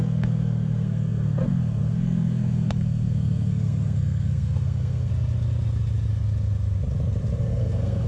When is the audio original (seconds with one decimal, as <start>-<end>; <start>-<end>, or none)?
5.1-7.4